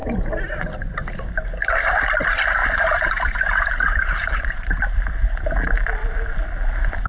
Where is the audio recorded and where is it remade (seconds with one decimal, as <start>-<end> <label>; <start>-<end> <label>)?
0.0-0.7 remade; 0.7-2.6 recorded; 2.6-4.7 remade; 4.7-7.1 recorded